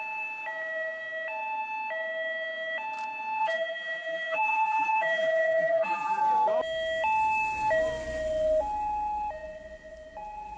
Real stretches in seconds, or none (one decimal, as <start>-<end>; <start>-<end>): 0.0-3.4; 6.2-10.6